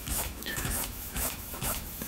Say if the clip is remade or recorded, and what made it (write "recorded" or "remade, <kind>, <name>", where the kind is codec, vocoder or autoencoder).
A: remade, autoencoder, DAC-VAE